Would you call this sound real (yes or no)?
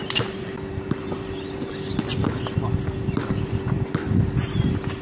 yes